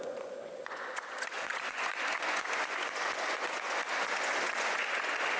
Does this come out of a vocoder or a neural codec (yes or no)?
yes